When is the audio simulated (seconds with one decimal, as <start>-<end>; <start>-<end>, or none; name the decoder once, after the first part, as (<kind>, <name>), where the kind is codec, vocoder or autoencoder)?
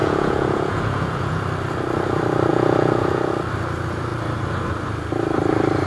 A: 0.0-1.4 (vocoder, Vocos); 2.5-3.3